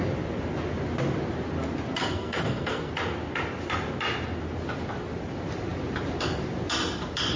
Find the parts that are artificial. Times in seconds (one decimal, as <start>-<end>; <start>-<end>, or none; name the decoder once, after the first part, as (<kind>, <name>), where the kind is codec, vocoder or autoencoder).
2.0-2.9 (codec, SNAC)